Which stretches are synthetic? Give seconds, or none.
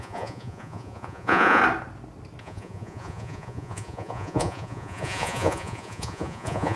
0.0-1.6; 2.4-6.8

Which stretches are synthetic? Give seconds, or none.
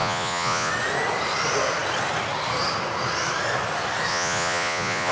0.0-0.7; 4.1-5.1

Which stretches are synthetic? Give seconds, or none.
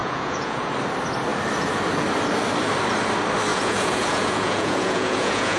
0.0-0.7; 3.5-5.6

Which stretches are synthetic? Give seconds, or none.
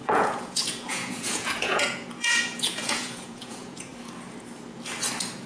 0.0-3.9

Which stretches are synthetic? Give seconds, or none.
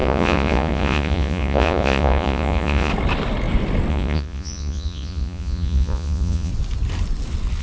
0.0-2.9; 3.9-6.5